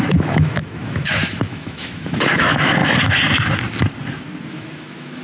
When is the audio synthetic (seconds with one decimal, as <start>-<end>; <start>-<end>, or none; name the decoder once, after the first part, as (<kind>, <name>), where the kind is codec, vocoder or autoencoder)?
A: 0.0-2.8 (autoencoder, DAC-VAE); 4.5-5.2